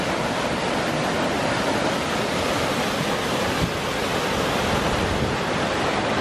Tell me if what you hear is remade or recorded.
recorded